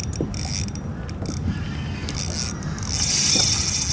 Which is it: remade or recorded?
recorded